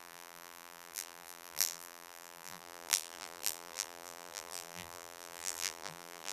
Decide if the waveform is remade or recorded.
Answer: remade